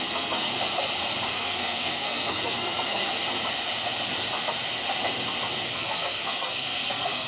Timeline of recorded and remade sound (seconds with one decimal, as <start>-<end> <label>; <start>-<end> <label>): 0.0-0.5 remade; 0.5-1.3 recorded; 1.3-3.0 remade; 3.0-5.7 recorded; 5.7-7.3 remade